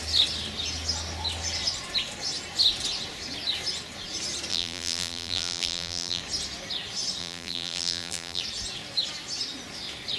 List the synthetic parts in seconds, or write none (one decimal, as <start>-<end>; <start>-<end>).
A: 4.5-6.2; 7.2-8.4